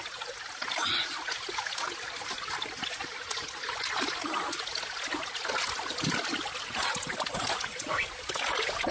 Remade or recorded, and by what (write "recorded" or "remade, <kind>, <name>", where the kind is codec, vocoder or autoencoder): recorded